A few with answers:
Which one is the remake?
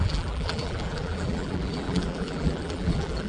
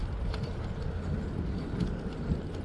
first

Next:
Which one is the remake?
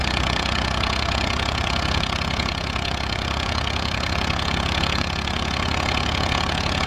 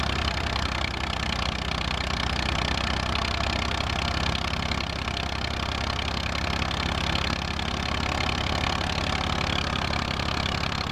first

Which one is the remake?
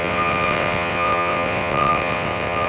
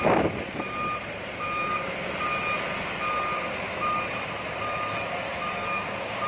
first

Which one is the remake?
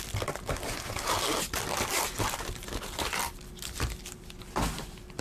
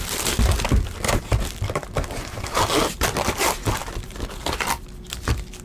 second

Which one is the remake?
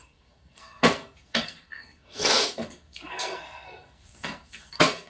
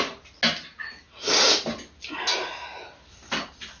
first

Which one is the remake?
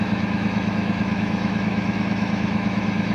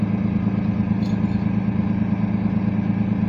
first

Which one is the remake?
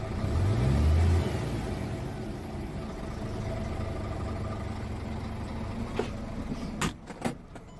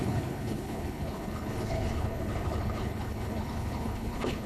second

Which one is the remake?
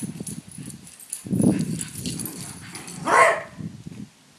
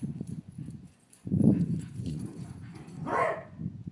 second